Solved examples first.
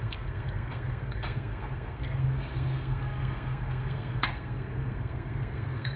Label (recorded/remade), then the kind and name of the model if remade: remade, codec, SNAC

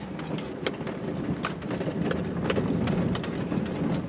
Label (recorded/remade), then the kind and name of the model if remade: recorded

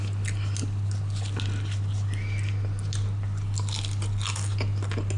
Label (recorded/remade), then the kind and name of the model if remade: recorded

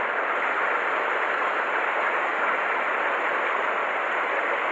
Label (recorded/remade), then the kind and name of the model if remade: recorded